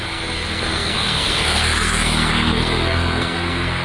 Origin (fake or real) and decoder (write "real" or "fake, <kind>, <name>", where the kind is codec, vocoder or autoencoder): fake, codec, SNAC